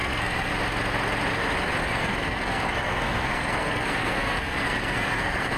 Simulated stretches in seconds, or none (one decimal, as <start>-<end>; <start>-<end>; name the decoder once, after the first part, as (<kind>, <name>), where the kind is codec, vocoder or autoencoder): 0.0-0.5 (codec, SNAC); 1.8-5.6